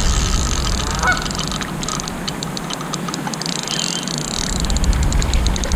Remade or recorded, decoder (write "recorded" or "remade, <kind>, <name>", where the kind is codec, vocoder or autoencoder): recorded